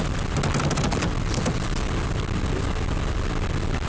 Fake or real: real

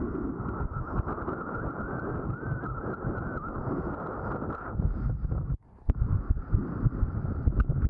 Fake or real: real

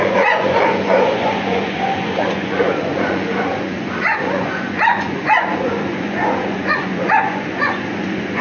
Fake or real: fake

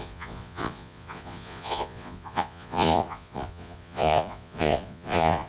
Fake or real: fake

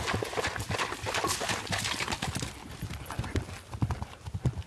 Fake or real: real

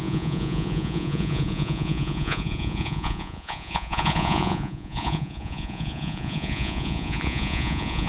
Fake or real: fake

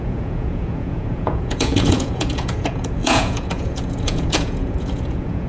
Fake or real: fake